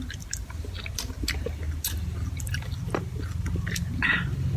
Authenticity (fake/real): real